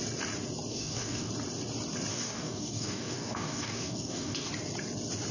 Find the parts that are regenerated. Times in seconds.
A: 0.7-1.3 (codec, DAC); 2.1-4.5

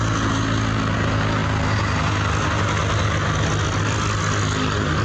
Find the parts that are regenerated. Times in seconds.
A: none

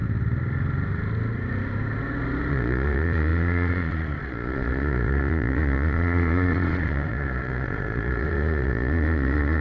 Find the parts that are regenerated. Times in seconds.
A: 2.5-9.6 (vocoder, Vocos)

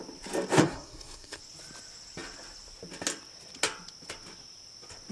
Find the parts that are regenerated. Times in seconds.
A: 0.6-1.4 (codec, SNAC)

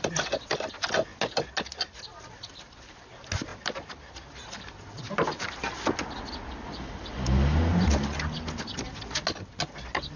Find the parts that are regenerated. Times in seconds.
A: none

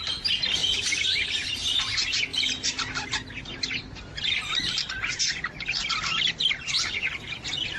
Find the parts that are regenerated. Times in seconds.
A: 0.6-1.5 (vocoder, BigVGAN v2)